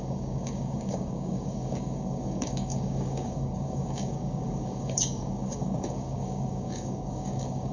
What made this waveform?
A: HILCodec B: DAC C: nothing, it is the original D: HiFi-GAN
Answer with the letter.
B